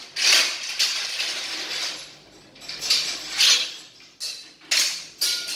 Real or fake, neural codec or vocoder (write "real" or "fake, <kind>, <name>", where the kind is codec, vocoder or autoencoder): real